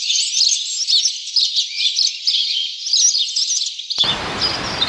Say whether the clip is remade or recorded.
recorded